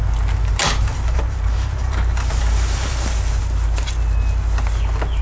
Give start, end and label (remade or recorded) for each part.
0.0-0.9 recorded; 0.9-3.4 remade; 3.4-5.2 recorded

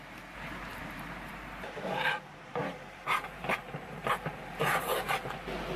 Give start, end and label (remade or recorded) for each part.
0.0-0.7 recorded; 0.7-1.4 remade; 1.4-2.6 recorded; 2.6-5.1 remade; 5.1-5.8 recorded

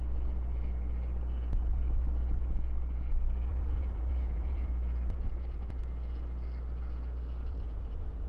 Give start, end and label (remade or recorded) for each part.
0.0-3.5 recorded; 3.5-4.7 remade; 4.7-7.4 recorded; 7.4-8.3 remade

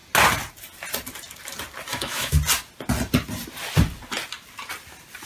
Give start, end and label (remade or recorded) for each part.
0.0-1.9 recorded; 1.9-2.4 remade; 2.4-5.3 recorded